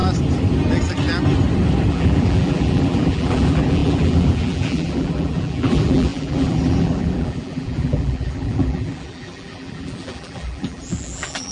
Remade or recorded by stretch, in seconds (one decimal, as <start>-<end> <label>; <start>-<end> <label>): 0.0-1.9 recorded; 1.9-11.5 remade